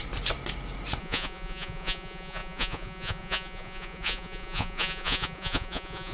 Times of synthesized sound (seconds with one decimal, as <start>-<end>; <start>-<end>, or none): 1.0-6.1

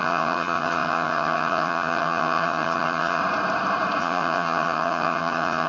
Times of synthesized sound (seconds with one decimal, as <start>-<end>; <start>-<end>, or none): 0.0-3.2; 4.0-5.7

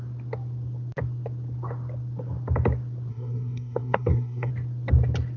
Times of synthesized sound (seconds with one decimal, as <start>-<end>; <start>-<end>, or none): 3.1-4.5

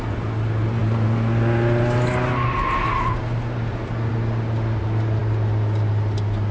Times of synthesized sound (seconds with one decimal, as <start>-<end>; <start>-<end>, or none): none

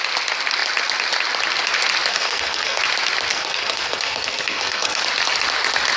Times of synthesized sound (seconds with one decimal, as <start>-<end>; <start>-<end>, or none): 2.1-2.8; 3.3-5.0

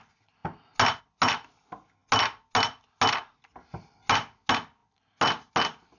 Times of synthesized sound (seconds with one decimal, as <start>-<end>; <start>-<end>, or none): none

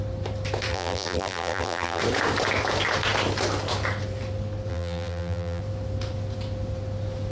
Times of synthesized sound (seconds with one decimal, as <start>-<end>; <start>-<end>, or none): 0.7-2.0; 4.7-5.6

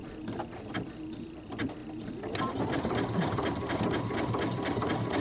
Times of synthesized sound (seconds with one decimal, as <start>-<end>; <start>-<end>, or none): 0.7-5.2